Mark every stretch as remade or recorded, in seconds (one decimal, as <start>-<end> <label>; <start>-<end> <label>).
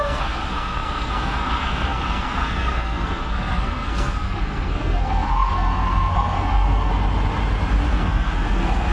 0.0-6.9 remade; 6.9-7.9 recorded; 7.9-8.9 remade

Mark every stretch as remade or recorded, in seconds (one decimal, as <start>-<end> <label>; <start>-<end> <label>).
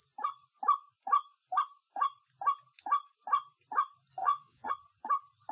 0.0-4.2 recorded; 4.2-4.7 remade; 4.7-5.5 recorded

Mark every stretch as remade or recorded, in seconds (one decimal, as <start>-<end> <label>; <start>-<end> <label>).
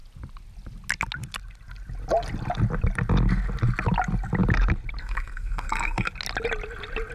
0.0-5.0 recorded; 5.0-6.1 remade; 6.1-7.1 recorded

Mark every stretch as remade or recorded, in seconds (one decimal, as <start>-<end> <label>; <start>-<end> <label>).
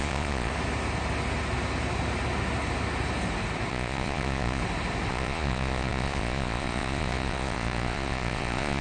0.0-0.5 remade; 0.5-3.7 recorded; 3.7-4.6 remade; 4.6-5.1 recorded; 5.1-8.8 remade